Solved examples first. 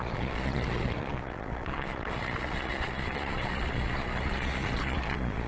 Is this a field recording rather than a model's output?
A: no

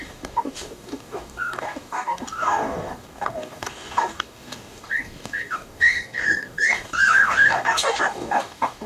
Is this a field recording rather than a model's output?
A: no